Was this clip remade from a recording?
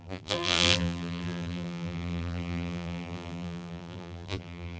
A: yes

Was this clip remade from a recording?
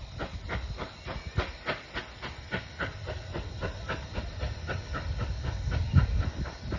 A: no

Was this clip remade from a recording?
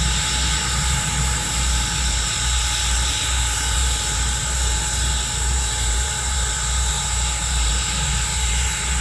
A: yes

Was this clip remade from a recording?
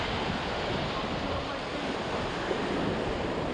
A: yes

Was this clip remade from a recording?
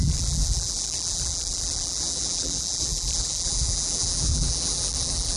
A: yes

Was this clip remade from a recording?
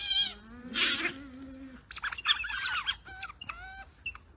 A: no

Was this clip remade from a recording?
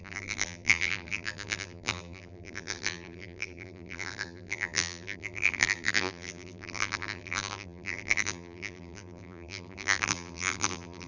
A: yes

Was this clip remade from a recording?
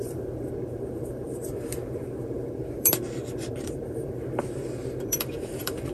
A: yes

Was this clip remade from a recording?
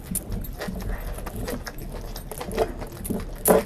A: no